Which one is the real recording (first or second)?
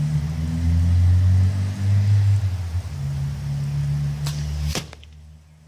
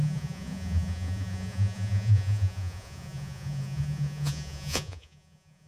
first